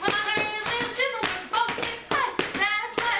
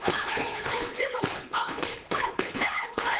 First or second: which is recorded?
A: first